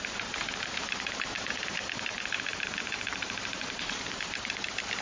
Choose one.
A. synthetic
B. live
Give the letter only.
A